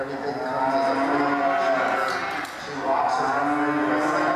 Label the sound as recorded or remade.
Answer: recorded